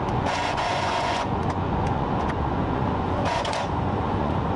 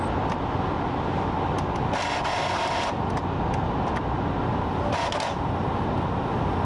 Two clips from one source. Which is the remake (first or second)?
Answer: first